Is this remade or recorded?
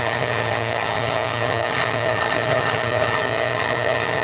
remade